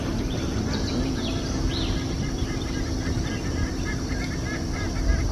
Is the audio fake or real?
fake